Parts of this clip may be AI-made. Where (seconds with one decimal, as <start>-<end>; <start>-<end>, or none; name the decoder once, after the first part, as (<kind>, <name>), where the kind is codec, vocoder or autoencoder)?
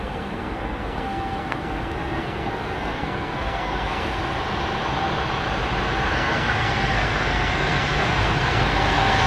0.0-4.2 (codec, SNAC); 6.1-9.3